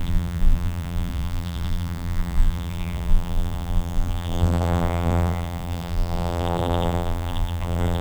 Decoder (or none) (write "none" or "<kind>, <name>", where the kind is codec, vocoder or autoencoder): vocoder, BigVGAN v2